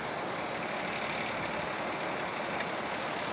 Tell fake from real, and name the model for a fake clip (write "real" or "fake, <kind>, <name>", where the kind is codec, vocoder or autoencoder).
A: real